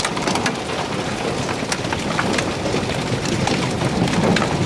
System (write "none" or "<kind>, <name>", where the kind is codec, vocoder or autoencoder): none